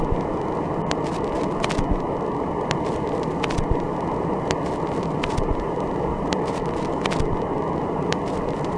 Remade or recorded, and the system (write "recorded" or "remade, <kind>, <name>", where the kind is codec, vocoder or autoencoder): remade, vocoder, BigVGAN v2